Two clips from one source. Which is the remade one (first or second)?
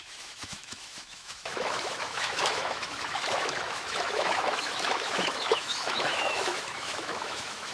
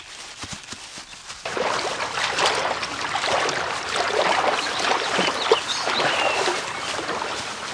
first